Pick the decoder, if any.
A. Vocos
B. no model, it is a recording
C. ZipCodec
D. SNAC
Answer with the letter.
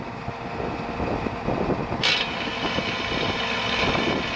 B